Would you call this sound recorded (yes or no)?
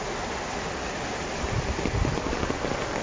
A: yes